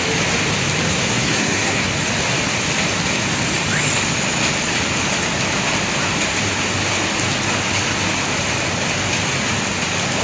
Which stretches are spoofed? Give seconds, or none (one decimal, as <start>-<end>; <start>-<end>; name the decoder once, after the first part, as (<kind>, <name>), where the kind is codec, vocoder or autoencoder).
0.9-1.9 (codec, SNAC)